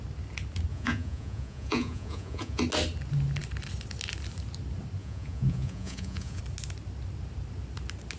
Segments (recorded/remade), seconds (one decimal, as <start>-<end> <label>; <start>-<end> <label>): 0.0-0.7 recorded; 0.7-2.6 remade; 2.6-5.0 recorded; 5.0-6.4 remade; 6.4-8.2 recorded